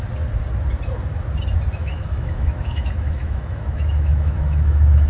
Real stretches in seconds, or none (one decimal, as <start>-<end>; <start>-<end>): 0.0-1.8